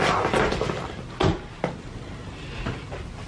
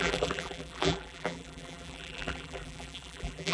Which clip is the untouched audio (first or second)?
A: first